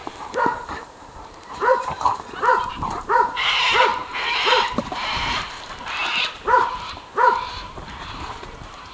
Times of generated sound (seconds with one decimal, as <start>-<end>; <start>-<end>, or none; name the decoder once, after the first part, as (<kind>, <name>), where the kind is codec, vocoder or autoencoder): 0.0-2.1 (vocoder, BigVGAN v2); 2.7-8.9

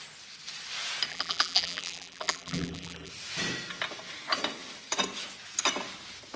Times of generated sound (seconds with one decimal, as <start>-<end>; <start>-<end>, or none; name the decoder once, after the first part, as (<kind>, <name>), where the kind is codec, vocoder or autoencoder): 1.1-3.1 (vocoder, BigVGAN v2)